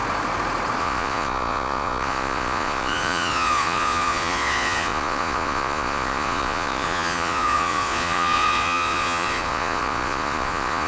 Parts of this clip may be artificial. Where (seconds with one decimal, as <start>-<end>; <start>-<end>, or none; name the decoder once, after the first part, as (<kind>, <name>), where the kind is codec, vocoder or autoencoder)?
0.8-10.9 (vocoder, Vocos)